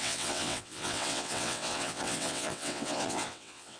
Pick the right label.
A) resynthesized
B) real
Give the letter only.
A